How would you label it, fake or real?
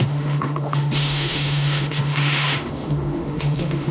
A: fake